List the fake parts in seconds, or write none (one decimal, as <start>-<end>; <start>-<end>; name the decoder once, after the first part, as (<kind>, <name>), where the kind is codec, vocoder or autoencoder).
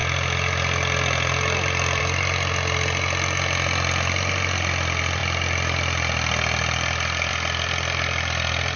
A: none